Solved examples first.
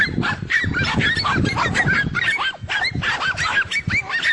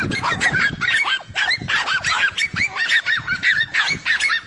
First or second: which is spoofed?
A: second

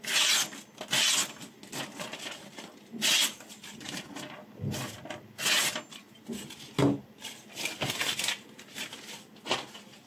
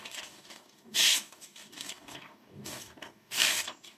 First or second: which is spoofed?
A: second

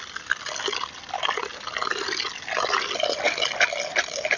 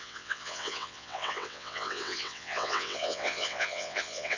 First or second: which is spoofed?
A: second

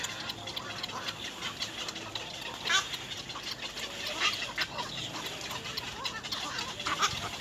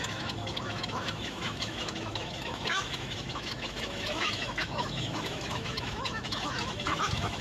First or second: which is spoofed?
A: second